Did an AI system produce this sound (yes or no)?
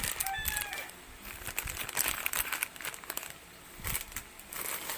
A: no